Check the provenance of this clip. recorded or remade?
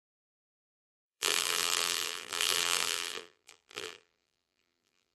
remade